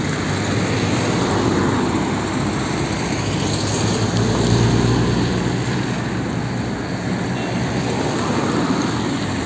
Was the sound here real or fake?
real